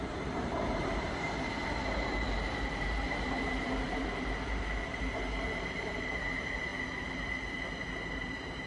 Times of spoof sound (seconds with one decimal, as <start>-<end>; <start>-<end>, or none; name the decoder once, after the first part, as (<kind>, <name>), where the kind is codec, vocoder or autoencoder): 0.0-8.7 (vocoder, BigVGAN v2)